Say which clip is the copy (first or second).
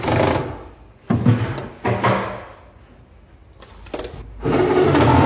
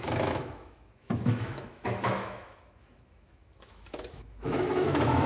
second